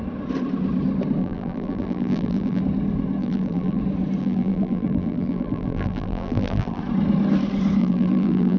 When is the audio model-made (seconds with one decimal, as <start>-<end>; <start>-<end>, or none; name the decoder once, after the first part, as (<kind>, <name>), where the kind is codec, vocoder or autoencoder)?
1.2-2.6 (vocoder, BigVGAN v2); 3.2-3.8; 4.2-6.8; 7.8-8.6